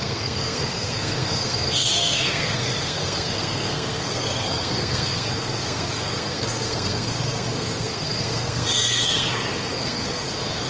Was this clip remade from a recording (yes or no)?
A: yes